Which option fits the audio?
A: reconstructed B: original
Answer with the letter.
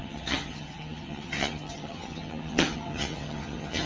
A